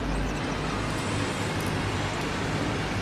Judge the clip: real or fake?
real